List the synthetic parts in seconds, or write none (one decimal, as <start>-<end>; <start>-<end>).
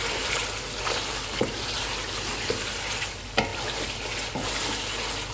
none